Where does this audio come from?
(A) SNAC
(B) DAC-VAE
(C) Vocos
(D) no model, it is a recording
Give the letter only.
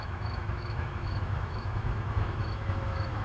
B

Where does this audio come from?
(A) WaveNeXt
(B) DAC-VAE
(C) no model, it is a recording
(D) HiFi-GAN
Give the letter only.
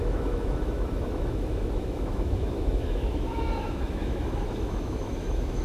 B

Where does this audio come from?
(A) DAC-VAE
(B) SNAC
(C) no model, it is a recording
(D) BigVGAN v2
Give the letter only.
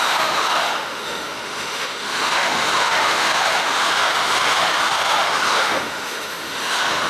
A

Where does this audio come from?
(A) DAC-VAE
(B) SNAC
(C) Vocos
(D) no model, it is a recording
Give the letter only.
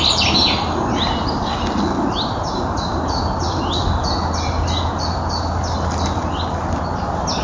D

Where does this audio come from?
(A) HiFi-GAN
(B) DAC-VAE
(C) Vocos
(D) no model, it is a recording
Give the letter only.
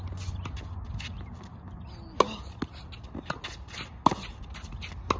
D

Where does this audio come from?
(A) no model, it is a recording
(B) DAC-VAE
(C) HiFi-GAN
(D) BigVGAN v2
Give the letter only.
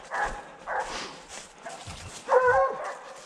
A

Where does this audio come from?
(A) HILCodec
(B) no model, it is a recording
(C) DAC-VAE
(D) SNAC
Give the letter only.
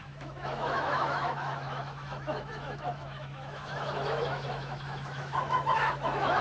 C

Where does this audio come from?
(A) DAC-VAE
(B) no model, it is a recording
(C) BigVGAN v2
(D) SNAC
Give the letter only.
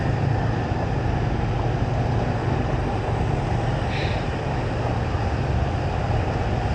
B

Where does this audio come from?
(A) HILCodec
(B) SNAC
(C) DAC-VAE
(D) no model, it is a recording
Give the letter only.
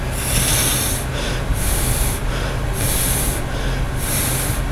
D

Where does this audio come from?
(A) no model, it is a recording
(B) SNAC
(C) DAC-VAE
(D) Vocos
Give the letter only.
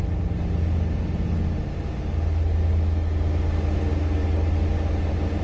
A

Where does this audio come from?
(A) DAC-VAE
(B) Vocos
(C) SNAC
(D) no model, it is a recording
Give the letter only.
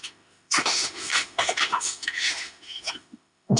A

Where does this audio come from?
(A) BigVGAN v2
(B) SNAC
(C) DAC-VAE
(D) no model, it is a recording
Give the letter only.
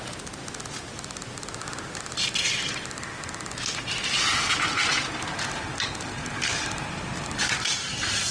D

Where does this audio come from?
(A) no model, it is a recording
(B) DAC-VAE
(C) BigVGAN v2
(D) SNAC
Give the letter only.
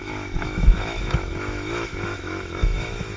B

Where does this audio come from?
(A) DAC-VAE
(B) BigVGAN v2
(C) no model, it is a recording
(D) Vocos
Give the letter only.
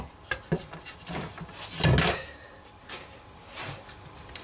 C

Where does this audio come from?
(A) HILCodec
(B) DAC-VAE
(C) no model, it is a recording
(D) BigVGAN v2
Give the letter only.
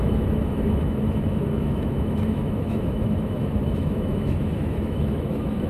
B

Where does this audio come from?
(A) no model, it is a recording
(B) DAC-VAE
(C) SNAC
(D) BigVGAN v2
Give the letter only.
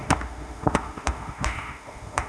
B